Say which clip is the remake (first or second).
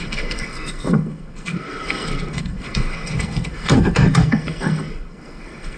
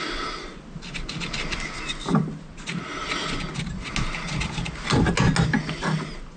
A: first